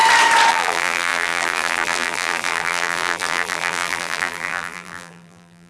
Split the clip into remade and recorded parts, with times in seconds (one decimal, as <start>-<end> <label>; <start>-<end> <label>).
0.0-0.5 recorded; 0.5-5.7 remade